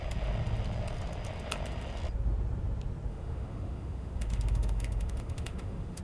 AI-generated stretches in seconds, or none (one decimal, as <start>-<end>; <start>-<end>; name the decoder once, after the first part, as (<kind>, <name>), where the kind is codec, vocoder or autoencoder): 3.1-6.0 (autoencoder, DAC-VAE)